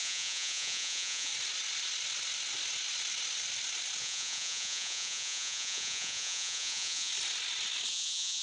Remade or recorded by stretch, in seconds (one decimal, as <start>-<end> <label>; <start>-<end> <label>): 0.0-1.3 remade; 1.3-4.0 recorded; 4.0-7.1 remade; 7.1-7.9 recorded; 7.9-8.4 remade